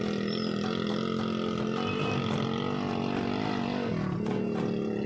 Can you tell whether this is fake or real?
real